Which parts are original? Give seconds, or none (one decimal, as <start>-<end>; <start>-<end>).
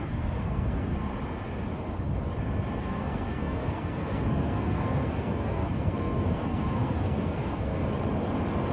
1.1-2.8; 7.8-8.7